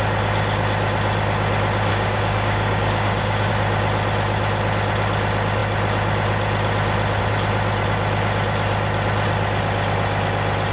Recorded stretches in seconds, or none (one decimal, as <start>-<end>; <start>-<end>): 0.0-1.9; 3.5-10.7